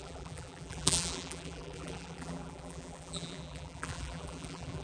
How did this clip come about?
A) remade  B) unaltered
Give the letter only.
A